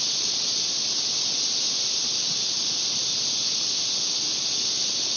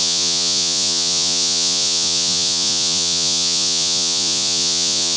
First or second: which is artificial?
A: second